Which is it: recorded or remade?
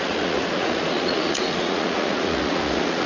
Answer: remade